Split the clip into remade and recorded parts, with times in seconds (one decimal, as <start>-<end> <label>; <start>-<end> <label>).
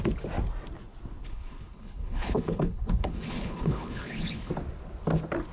0.0-1.2 recorded; 1.2-4.5 remade; 4.5-5.5 recorded